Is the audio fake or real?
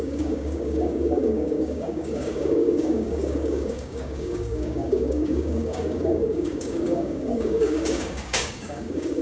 fake